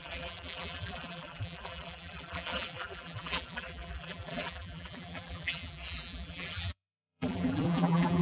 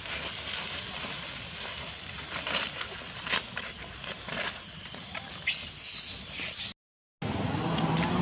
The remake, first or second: first